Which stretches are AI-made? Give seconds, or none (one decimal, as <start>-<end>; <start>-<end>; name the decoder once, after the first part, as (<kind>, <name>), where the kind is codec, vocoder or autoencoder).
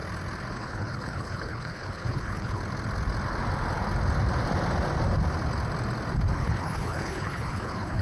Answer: 0.5-2.6 (codec, HILCodec); 6.3-8.0